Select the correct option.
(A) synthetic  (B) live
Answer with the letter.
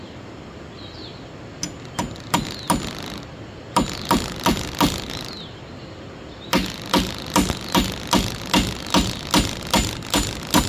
B